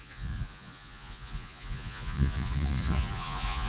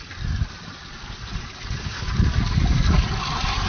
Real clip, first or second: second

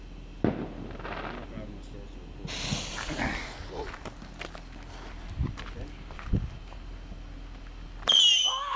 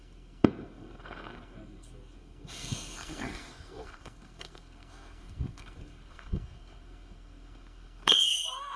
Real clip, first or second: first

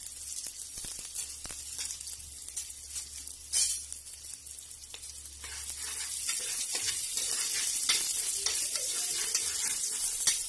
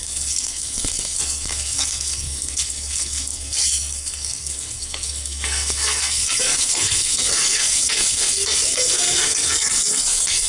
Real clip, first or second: first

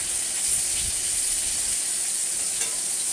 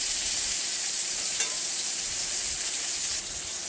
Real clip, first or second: first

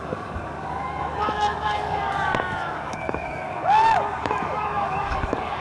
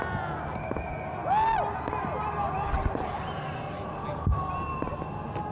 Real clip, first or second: second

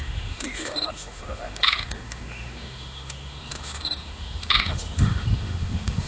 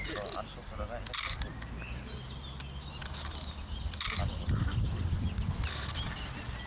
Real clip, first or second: second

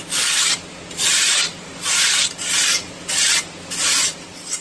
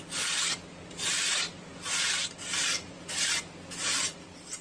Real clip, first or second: second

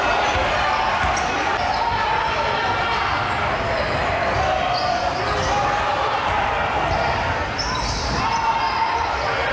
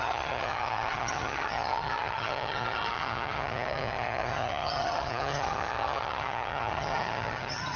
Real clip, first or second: first